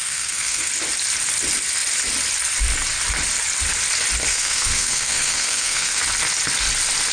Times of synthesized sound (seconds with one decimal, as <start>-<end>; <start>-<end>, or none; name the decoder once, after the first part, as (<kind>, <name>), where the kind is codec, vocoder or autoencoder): 0.0-0.7 (codec, SNAC); 4.3-6.0